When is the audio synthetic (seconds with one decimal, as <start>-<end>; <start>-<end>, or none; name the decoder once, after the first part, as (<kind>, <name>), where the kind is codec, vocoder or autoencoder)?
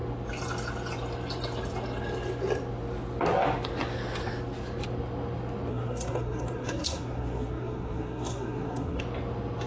5.7-9.0 (codec, SNAC)